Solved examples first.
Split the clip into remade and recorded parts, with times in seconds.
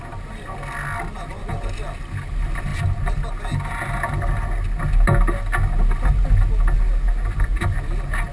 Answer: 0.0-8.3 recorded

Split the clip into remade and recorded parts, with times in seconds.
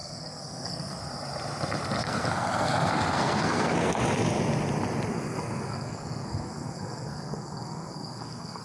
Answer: 0.0-1.0 remade; 1.0-2.0 recorded; 2.0-3.9 remade; 3.9-5.1 recorded; 5.1-8.6 remade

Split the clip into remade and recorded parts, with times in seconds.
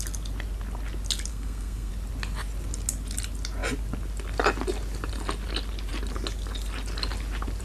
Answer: 0.0-1.3 recorded; 1.3-1.9 remade; 1.9-7.6 recorded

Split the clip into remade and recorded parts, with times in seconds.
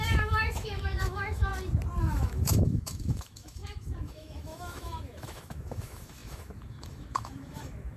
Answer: 0.0-1.5 remade; 1.5-2.0 recorded; 2.0-8.0 remade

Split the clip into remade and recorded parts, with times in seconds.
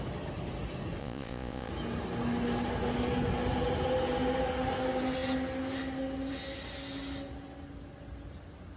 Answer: 0.0-1.0 recorded; 1.0-1.7 remade; 1.7-8.8 recorded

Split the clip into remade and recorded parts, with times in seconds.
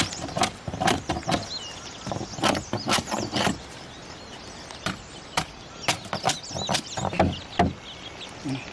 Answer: 0.0-4.3 recorded; 4.3-5.0 remade; 5.0-8.7 recorded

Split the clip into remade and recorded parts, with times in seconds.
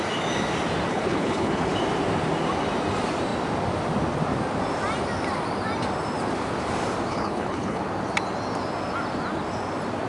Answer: 0.0-0.9 recorded; 0.9-1.7 remade; 1.7-7.1 recorded; 7.1-7.8 remade; 7.8-10.1 recorded